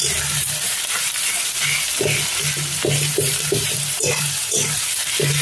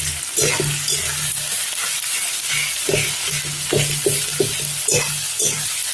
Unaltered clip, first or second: second